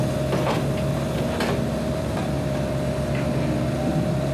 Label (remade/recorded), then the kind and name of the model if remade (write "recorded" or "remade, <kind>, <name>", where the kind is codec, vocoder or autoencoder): recorded